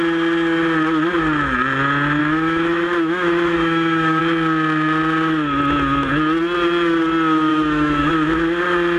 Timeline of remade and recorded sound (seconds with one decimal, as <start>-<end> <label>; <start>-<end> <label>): 0.0-2.2 recorded; 2.2-4.2 remade; 4.2-7.5 recorded; 7.5-8.1 remade; 8.1-9.0 recorded